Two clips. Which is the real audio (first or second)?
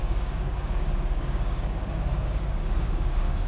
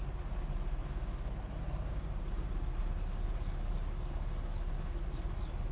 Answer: second